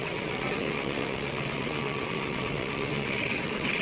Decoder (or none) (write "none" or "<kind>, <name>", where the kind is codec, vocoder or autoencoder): vocoder, WaveNeXt